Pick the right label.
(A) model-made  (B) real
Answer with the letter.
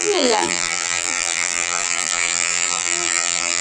A